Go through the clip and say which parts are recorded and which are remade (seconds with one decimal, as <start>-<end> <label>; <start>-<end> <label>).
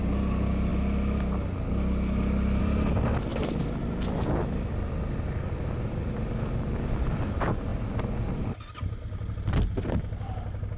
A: 0.0-0.7 remade; 0.7-2.6 recorded; 2.6-7.7 remade; 7.7-8.3 recorded; 8.3-10.8 remade